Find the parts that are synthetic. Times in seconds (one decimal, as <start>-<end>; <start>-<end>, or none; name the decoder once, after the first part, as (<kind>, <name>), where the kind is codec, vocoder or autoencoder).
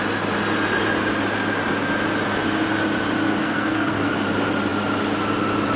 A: 3.4-4.1 (codec, SNAC)